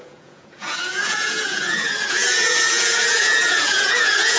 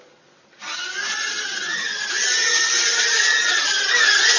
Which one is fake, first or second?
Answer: first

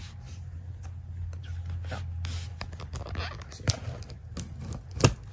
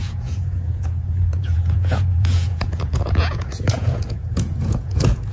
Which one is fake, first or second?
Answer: second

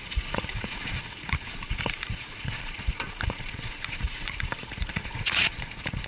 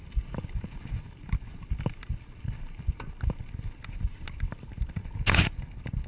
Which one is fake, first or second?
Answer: first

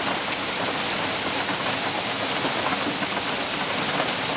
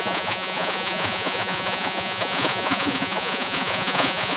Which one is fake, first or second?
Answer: second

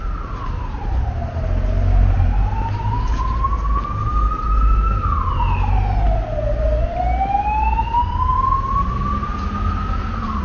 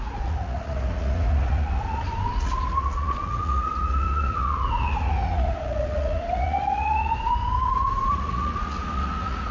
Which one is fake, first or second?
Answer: second